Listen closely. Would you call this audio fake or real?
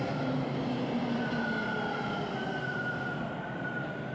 real